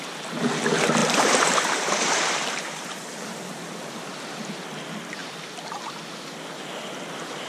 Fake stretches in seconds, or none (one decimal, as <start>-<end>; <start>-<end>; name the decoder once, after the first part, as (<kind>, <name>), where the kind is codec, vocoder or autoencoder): 1.0-3.3 (vocoder, BigVGAN v2)